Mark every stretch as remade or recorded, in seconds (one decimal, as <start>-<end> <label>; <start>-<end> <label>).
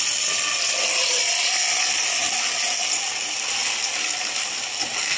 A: 0.0-5.2 recorded